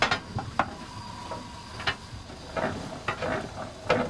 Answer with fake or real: real